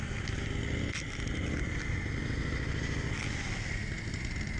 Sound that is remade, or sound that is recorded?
recorded